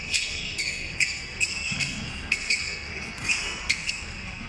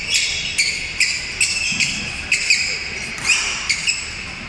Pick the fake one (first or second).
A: first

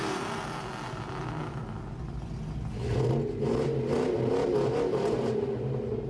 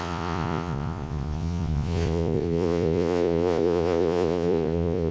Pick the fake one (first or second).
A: second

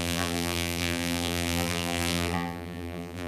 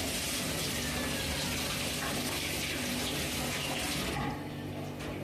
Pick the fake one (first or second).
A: first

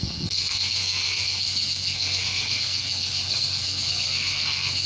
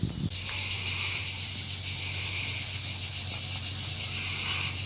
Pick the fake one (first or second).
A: first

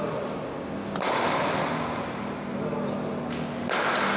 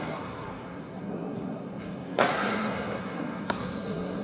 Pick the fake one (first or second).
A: second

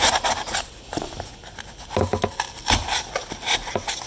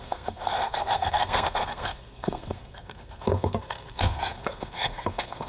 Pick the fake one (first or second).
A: second